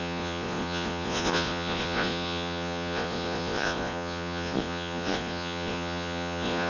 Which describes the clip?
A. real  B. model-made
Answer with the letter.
B